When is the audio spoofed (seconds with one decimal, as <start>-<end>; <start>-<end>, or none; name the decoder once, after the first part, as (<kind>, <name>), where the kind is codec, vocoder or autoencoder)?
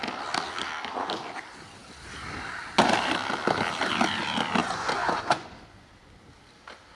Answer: 4.6-6.1 (vocoder, Vocos)